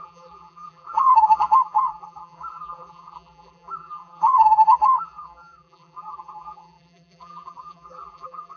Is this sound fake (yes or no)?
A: yes